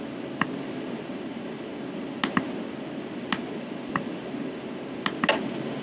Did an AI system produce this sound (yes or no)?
no